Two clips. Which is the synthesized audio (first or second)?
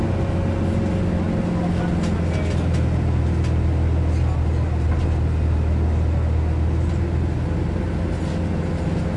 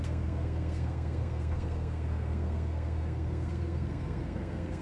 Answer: second